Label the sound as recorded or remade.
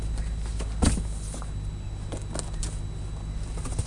recorded